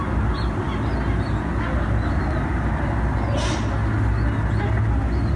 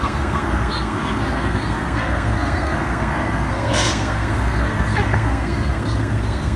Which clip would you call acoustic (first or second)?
first